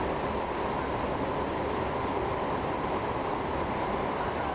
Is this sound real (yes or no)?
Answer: yes